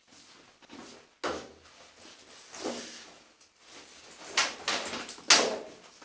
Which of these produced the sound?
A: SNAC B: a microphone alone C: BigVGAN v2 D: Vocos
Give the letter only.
B